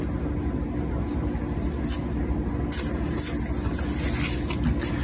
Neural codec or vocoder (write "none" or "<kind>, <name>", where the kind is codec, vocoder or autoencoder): none